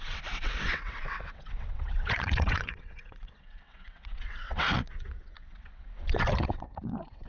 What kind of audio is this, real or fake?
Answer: fake